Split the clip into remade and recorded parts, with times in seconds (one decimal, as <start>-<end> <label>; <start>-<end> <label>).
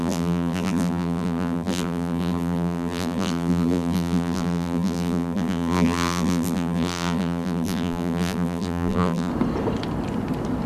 0.0-9.3 remade; 9.3-10.7 recorded